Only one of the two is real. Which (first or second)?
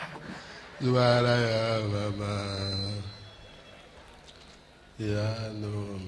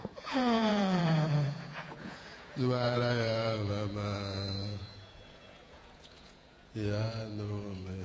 first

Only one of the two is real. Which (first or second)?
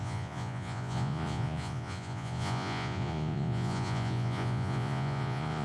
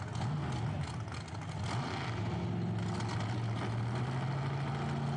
second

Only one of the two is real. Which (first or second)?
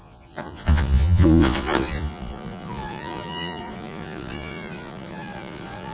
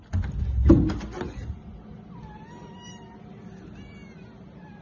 second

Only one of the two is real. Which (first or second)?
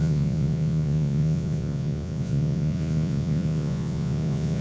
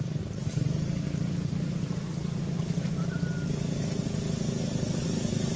second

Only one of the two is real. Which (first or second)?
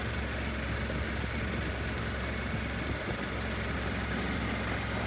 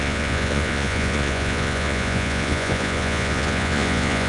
first